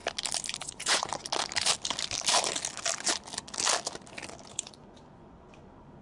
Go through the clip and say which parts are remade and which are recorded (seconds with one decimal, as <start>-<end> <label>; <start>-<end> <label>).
0.0-0.6 recorded; 0.6-1.1 remade; 1.1-4.5 recorded; 4.5-6.0 remade